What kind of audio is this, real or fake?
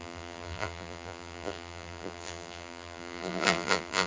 fake